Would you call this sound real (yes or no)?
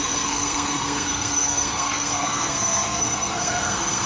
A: no